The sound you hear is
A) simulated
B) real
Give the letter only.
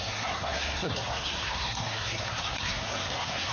A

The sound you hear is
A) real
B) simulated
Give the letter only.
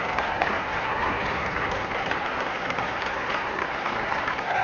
B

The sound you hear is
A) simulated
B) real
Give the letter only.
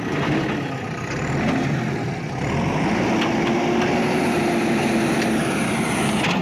B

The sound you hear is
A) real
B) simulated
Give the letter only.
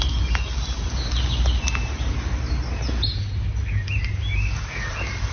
A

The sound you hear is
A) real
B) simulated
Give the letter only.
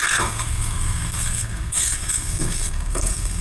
B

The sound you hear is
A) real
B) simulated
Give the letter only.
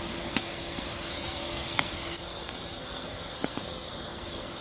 B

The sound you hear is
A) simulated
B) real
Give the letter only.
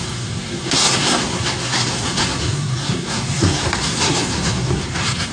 A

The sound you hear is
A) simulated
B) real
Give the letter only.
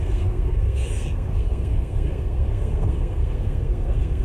A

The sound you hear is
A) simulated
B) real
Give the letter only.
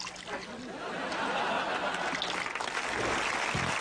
B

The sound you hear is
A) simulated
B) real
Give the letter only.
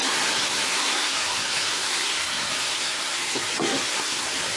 A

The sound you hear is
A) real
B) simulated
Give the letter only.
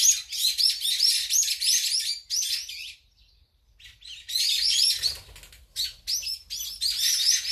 A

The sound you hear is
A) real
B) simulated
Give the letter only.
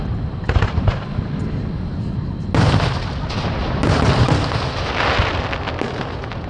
A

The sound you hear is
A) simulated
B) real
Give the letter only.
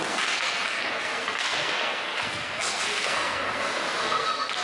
A